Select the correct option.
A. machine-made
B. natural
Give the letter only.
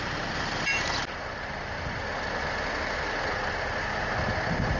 B